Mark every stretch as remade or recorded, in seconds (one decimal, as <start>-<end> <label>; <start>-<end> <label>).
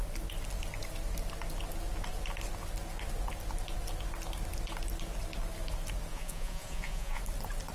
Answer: 0.0-6.1 recorded; 6.1-7.2 remade; 7.2-7.7 recorded